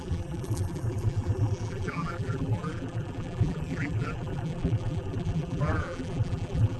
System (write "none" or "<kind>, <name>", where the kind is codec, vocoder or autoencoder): vocoder, BigVGAN v2